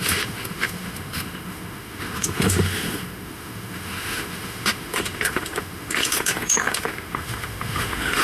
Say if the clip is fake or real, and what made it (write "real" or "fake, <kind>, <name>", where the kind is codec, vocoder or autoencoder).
fake, autoencoder, DAC-VAE